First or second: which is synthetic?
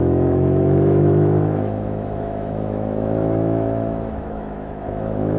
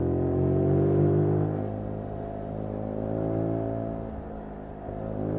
first